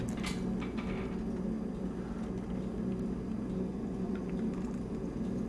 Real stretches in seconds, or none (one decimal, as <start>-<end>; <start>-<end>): 0.0-3.7; 4.3-5.5